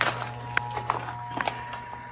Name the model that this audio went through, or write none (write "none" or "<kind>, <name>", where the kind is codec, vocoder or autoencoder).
none